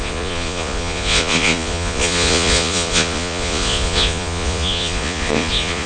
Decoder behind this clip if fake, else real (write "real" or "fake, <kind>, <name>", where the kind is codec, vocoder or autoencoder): fake, vocoder, Vocos